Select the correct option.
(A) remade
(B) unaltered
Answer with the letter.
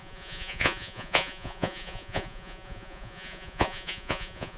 A